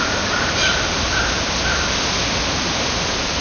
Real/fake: fake